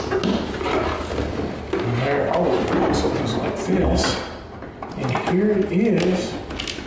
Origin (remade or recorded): recorded